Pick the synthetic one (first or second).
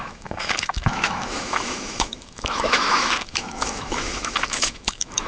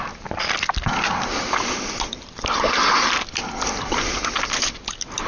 first